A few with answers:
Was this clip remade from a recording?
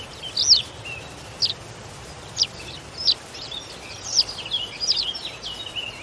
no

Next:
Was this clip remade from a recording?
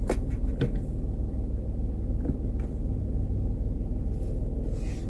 no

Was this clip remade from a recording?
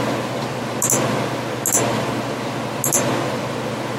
no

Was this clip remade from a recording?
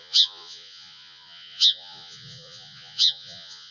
yes